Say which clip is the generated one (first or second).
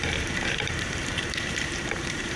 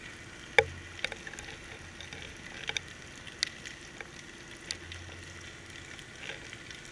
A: first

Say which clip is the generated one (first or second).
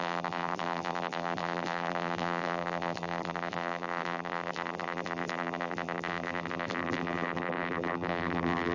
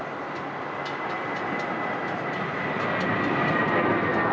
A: first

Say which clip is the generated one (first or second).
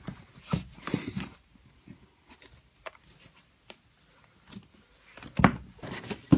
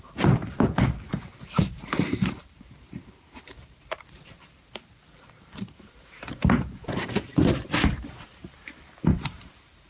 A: second